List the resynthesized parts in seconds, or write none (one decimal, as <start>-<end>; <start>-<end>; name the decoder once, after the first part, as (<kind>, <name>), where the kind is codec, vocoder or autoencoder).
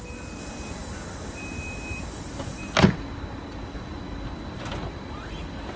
none